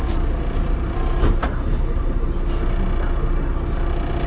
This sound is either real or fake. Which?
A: real